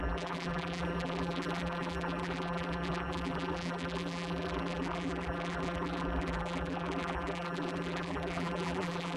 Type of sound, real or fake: fake